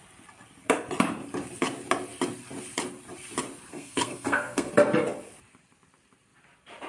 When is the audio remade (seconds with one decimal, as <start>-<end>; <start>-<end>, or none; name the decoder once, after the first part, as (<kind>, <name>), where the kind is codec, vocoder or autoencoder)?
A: 3.7-4.7 (codec, SNAC)